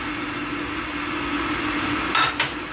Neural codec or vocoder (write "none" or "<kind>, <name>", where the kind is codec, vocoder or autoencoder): none